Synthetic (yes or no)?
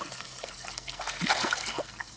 yes